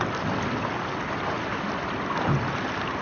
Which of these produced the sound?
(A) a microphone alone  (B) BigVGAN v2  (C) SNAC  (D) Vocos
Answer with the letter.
A